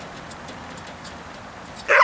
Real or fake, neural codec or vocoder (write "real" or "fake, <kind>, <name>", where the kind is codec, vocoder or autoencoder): real